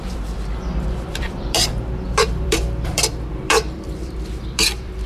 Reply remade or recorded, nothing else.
remade